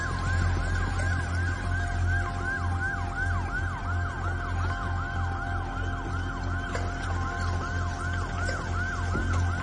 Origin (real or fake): real